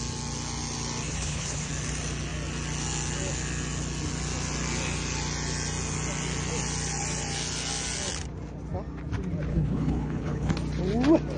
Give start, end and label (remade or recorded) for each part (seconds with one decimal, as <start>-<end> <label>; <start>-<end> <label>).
0.0-1.1 recorded; 1.1-1.7 remade; 1.7-9.5 recorded; 9.5-10.5 remade; 10.5-11.4 recorded